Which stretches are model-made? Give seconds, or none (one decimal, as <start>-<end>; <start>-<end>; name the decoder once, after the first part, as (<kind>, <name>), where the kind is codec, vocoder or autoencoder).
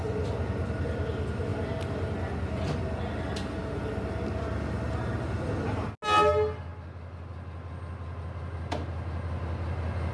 none